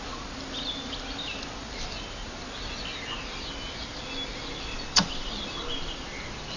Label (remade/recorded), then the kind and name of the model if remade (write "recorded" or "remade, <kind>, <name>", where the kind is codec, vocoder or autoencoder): recorded